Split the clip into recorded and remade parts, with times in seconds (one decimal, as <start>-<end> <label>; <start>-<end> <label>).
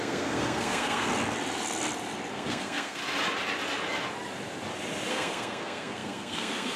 0.0-1.1 remade; 1.1-2.3 recorded; 2.3-3.0 remade; 3.0-5.1 recorded; 5.1-6.8 remade